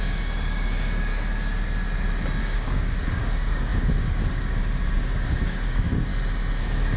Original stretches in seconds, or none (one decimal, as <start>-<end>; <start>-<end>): 1.1-2.4; 6.1-6.6